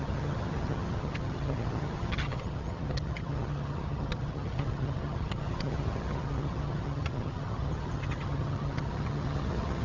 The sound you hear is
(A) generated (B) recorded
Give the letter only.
A